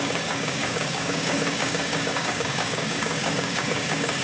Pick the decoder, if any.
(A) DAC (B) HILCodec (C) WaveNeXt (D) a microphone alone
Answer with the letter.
A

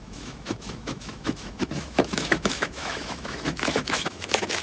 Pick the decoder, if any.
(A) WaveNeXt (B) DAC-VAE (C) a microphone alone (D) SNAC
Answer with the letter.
B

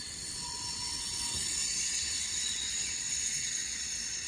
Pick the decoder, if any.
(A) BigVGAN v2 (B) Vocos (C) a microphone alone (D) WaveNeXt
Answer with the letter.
D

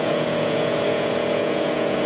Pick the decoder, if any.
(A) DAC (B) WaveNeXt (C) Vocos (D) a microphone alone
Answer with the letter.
C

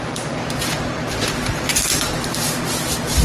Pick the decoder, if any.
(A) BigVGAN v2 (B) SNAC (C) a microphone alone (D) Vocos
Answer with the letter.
A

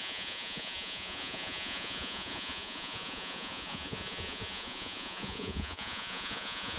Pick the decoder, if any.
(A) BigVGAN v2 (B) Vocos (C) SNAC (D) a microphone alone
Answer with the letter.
B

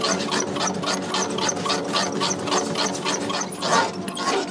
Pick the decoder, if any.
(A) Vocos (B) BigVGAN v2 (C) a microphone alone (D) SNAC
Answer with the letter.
C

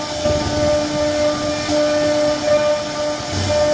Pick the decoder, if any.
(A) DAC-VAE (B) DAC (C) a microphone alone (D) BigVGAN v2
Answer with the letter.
C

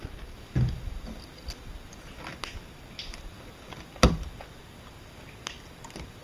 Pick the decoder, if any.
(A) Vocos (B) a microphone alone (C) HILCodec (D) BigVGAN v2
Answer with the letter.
B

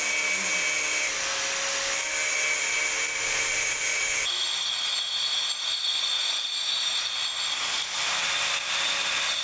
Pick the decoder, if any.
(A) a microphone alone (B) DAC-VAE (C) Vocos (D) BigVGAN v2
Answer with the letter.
A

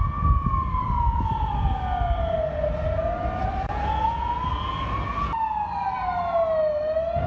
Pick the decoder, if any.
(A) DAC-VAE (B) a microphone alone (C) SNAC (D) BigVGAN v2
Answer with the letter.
B